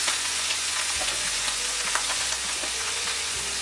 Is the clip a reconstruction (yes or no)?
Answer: yes